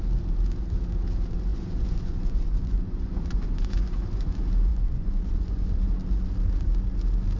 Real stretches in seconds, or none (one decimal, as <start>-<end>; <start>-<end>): 0.0-1.5; 4.3-4.7; 5.9-7.4